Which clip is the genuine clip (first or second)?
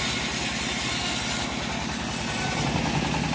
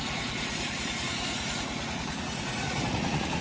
first